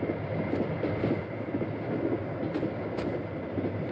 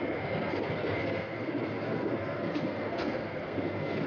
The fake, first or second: second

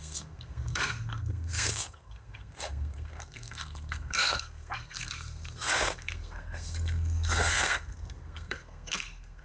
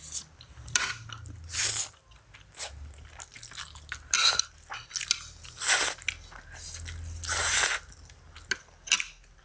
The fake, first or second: first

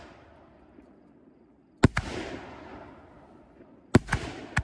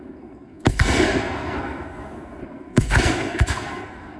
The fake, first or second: second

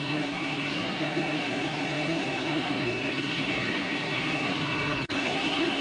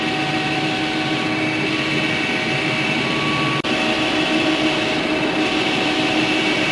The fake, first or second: first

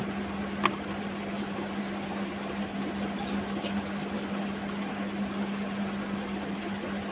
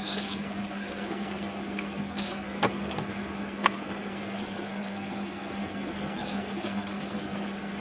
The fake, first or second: second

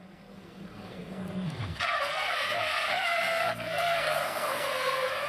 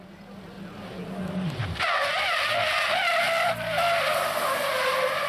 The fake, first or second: first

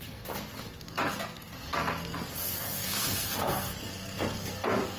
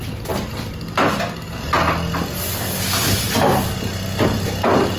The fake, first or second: first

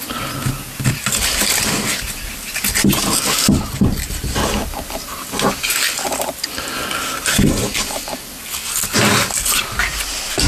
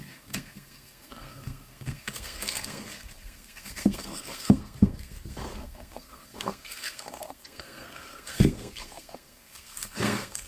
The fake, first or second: second